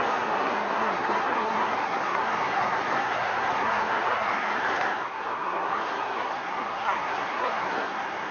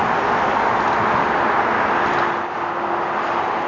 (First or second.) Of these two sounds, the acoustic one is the second